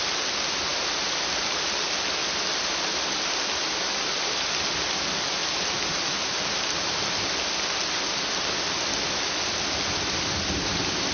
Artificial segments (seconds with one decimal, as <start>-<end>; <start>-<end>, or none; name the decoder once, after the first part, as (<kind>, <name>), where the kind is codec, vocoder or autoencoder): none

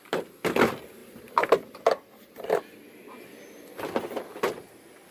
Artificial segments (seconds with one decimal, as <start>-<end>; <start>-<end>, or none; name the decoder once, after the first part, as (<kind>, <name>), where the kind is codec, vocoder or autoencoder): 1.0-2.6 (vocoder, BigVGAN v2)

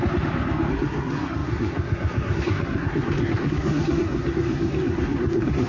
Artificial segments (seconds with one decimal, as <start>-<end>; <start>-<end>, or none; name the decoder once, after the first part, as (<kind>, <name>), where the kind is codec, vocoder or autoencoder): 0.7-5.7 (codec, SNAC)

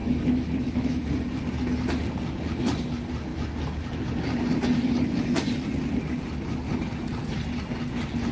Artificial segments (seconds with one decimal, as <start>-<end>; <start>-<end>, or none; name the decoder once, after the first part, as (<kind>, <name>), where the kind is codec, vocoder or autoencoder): 0.0-1.1 (autoencoder, DAC-VAE)

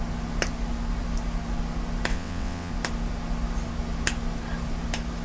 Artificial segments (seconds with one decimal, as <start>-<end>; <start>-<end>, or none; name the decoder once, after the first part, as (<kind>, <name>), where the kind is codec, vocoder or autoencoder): 2.1-2.7 (vocoder, WaveNeXt)

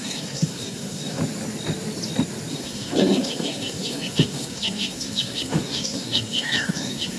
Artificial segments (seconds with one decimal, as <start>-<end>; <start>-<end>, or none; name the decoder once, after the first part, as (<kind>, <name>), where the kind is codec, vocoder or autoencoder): 0.0-1.2 (codec, SNAC); 2.5-7.2

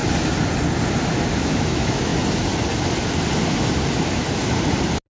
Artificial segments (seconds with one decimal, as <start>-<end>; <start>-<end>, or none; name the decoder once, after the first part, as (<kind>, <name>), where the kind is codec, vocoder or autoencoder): 1.4-2.1 (autoencoder, DAC-VAE)